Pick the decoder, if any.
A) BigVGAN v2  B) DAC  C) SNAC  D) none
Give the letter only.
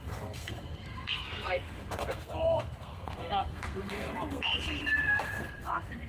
C